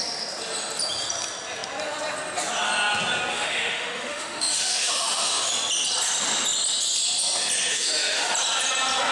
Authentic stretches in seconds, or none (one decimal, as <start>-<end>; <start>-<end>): 0.0-3.3; 5.5-7.7; 8.3-9.1